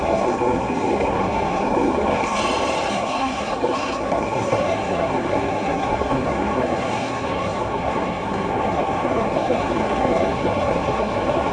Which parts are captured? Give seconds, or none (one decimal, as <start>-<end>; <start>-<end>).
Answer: 2.4-2.9